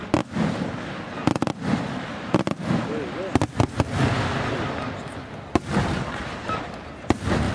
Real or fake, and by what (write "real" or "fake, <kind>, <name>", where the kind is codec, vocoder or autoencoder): real